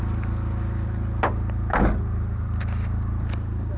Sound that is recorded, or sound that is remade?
recorded